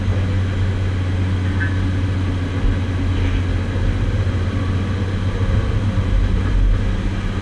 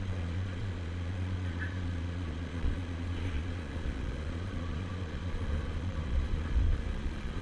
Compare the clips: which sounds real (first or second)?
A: first